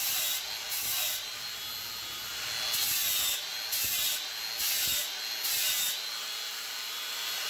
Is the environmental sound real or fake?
real